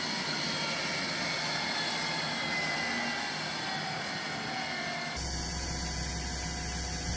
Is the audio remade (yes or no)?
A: no